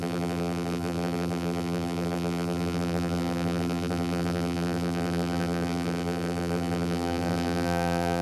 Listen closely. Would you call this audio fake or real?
fake